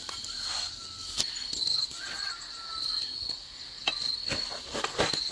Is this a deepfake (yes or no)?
no